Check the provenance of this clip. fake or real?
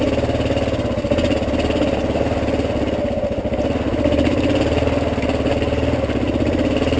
real